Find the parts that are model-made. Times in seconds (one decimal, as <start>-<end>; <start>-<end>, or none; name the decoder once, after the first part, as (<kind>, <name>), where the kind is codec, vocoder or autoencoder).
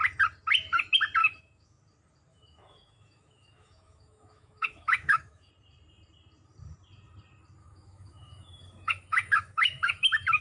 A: 1.2-1.8 (autoencoder, DAC-VAE); 2.3-5.5; 7.6-10.4